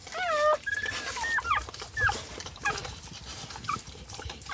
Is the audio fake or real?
real